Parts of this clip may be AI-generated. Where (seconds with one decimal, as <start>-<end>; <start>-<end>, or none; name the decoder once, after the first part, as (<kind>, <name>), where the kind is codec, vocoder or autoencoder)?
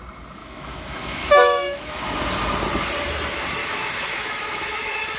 0.4-2.2 (autoencoder, DAC-VAE); 3.6-4.6